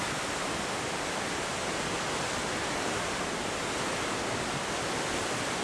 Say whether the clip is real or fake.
real